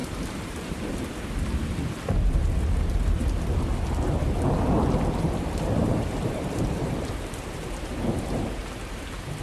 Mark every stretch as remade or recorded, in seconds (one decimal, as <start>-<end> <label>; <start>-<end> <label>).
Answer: 0.0-0.8 remade; 0.8-5.8 recorded; 5.8-8.6 remade; 8.6-9.4 recorded